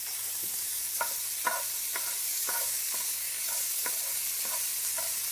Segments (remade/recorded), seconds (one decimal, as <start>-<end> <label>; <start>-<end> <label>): 0.0-0.4 recorded; 0.4-1.1 remade; 1.1-2.2 recorded; 2.2-3.9 remade; 3.9-5.3 recorded